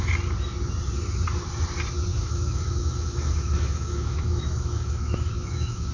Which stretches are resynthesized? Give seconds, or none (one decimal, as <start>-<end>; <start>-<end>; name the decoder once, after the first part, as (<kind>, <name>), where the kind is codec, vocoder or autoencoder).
2.1-5.9 (autoencoder, DAC-VAE)